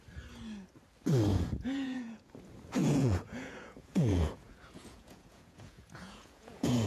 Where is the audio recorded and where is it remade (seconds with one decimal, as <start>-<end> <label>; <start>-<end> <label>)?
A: 0.0-1.3 recorded; 1.3-2.3 remade; 2.3-2.8 recorded; 2.8-6.9 remade